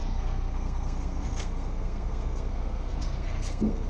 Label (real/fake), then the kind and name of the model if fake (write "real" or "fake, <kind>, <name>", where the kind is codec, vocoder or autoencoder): fake, codec, SNAC